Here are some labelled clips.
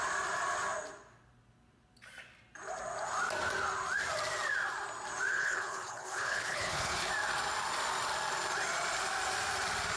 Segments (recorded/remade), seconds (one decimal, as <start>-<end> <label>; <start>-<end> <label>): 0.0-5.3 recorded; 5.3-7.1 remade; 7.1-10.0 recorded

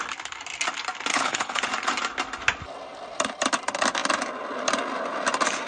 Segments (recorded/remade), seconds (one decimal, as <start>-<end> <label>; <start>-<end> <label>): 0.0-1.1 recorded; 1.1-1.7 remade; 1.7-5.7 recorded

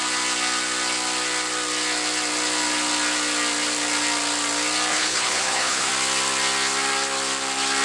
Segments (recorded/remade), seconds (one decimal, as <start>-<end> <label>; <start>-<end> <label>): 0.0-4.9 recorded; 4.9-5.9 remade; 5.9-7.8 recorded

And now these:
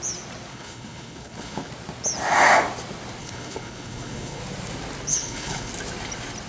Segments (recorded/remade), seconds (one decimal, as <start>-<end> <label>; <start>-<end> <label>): 0.0-0.5 recorded; 0.5-1.7 remade; 1.7-3.2 recorded; 3.2-4.4 remade; 4.4-5.1 recorded; 5.1-5.7 remade; 5.7-6.5 recorded

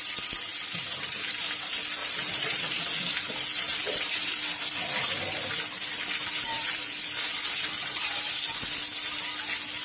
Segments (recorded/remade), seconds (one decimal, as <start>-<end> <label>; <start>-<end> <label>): 0.0-9.8 recorded